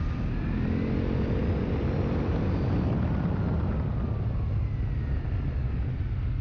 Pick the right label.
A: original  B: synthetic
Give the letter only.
A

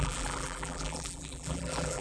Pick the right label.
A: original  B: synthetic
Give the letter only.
B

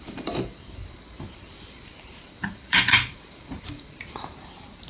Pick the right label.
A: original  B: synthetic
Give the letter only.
B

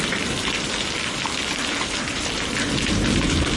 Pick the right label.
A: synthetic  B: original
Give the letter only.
A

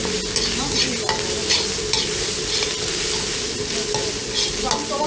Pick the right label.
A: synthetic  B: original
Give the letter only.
B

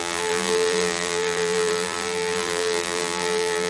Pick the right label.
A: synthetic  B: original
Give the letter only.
A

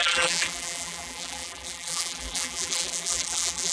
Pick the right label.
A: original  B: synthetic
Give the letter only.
B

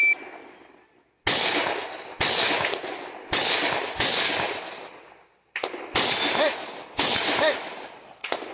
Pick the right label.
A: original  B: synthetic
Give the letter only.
A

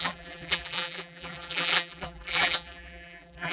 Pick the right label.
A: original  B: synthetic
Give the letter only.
B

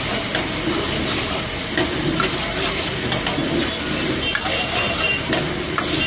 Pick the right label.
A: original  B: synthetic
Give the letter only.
A